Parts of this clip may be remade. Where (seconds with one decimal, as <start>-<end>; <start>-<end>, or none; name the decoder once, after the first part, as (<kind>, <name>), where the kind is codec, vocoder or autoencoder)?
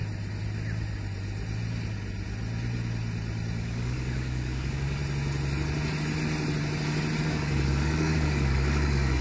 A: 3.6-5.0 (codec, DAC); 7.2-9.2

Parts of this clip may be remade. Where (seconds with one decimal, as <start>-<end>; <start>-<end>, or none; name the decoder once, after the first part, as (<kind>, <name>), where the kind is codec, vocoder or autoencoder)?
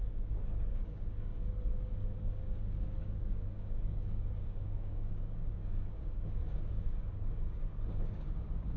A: 0.0-1.3 (codec, DAC); 1.8-8.8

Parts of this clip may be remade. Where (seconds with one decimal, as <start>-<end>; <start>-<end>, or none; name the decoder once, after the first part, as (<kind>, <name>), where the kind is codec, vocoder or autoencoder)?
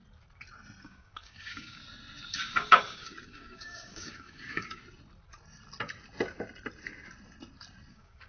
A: 0.8-1.8 (codec, DAC); 2.3-4.8; 7.9-8.3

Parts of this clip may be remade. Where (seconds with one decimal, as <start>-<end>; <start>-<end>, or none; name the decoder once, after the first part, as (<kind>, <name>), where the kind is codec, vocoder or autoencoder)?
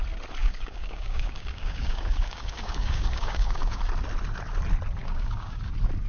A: 0.4-3.8 (codec, DAC); 5.0-5.6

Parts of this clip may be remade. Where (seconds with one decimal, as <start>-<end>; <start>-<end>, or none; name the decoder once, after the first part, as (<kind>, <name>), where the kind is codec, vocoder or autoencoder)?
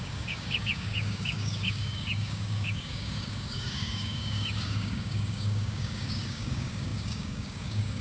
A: 0.0-8.0 (codec, DAC)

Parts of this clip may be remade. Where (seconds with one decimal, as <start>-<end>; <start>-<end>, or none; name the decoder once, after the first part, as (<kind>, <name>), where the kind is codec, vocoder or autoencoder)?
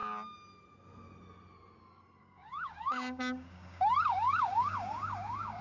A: 2.2-5.6 (codec, DAC)